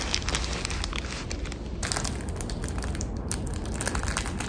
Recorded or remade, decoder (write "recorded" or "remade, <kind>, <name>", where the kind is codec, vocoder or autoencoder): recorded